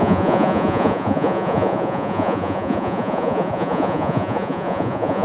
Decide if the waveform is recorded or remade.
remade